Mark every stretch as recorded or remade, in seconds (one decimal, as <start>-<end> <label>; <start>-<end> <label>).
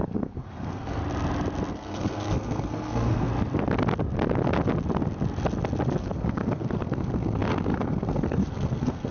0.0-1.0 remade; 1.0-1.7 recorded; 1.7-3.3 remade; 3.3-6.0 recorded; 6.0-9.1 remade